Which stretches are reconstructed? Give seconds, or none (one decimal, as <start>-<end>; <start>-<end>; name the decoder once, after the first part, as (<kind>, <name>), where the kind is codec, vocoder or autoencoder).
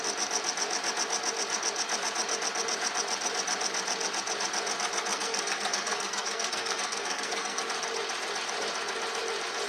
5.1-7.6 (codec, SNAC)